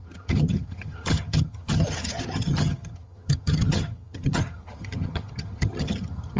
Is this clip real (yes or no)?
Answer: no